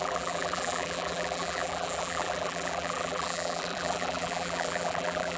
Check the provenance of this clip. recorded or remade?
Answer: remade